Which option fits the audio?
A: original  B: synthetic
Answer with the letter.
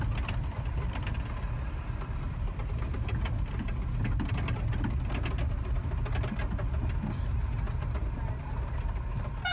A